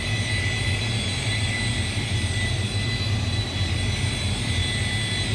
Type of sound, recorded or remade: recorded